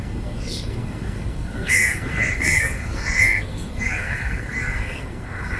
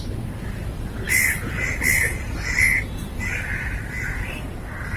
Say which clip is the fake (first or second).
first